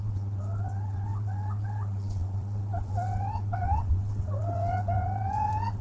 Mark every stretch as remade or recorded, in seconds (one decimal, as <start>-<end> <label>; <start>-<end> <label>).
0.0-5.8 remade